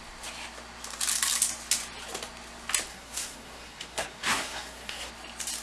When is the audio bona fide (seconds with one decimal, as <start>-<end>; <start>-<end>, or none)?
0.0-2.9; 5.1-5.6

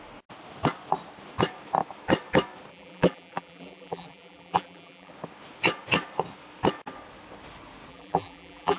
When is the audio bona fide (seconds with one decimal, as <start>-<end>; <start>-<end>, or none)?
0.0-2.7; 5.1-7.9

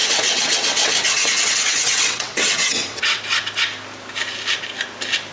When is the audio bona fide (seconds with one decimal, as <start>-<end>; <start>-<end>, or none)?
3.2-5.3

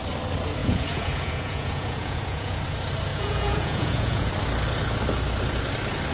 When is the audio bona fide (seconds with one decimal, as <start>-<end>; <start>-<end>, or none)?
0.0-0.6; 2.6-3.1; 4.3-6.1

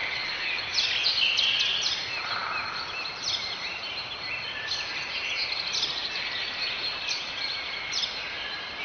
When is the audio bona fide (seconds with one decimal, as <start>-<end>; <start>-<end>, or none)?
0.6-8.8

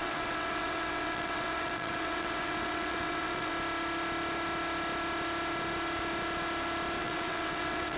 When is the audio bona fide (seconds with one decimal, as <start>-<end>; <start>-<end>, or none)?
3.5-7.0